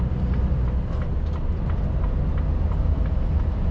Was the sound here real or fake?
real